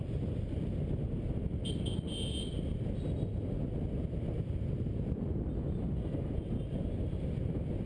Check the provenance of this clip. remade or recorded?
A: recorded